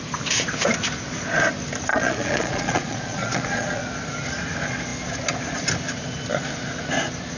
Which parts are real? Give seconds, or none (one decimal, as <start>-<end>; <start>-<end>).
0.0-1.9; 3.8-7.4